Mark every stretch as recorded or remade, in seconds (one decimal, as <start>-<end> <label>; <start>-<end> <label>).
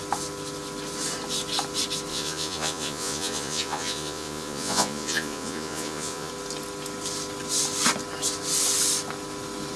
0.0-2.1 recorded; 2.1-6.3 remade; 6.3-9.8 recorded